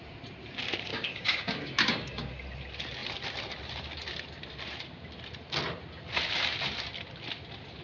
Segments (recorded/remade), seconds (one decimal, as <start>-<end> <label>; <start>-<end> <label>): 0.0-0.9 recorded; 0.9-2.3 remade; 2.3-7.8 recorded